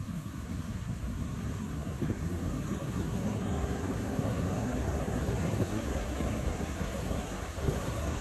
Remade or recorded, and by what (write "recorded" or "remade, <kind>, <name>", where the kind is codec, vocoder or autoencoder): remade, codec, SNAC